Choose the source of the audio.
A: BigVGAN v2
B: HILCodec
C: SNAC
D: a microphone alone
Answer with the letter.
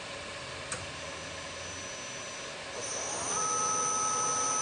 D